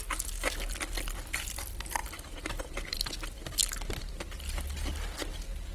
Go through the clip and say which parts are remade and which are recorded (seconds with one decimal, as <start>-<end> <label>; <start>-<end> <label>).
0.0-2.0 recorded; 2.0-3.1 remade; 3.1-5.7 recorded